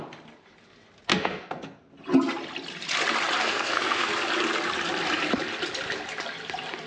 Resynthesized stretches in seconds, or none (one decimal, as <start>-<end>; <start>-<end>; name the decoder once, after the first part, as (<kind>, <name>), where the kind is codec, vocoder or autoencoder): 1.1-1.9 (codec, SNAC); 3.4-4.1